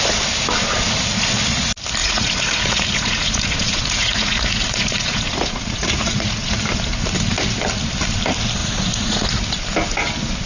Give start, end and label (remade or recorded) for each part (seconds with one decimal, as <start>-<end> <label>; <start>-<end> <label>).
0.0-2.0 recorded; 2.0-6.6 remade; 6.6-8.6 recorded; 8.6-9.3 remade; 9.3-10.5 recorded